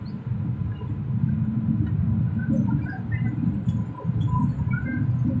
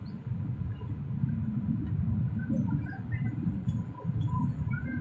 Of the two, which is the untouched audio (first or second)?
first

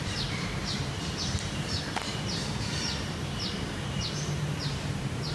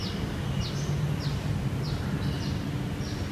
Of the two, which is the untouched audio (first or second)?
second